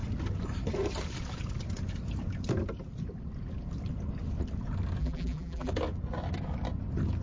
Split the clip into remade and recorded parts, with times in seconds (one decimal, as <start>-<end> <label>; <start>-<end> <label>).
0.0-5.0 recorded; 5.0-5.7 remade; 5.7-7.2 recorded